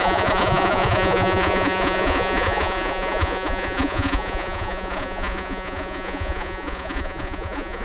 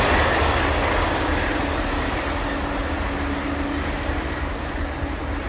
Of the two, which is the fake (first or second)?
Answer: first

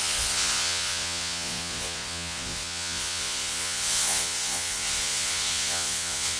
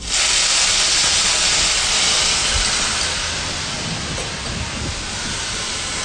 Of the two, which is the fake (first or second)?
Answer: first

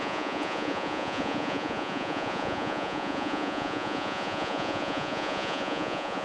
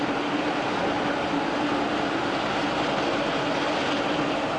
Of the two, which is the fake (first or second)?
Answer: first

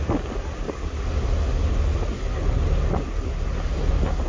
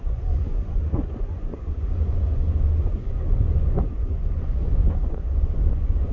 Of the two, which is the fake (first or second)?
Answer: second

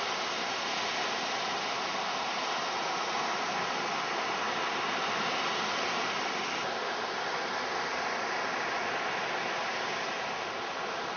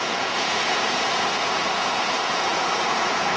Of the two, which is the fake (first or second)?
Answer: second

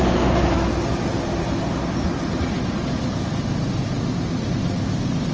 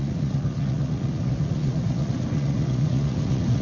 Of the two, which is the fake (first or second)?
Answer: second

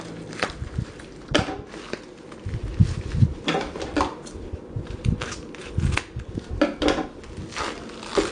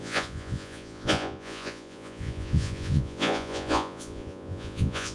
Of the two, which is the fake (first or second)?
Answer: second